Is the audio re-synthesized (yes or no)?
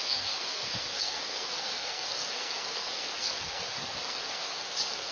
yes